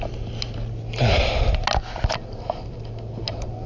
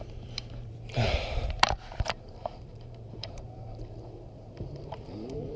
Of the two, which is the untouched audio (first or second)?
first